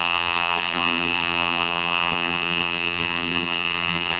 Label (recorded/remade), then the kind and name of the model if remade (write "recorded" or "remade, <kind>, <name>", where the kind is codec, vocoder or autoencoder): remade, vocoder, BigVGAN v2